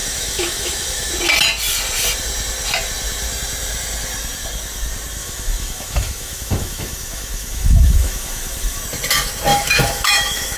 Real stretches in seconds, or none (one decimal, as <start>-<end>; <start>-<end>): 1.1-5.2; 8.8-9.5

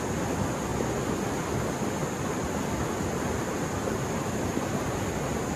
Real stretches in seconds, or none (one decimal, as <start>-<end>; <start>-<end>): 0.0-5.6

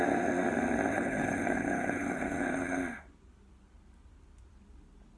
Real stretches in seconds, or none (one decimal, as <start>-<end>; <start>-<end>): 0.0-0.9; 2.8-5.2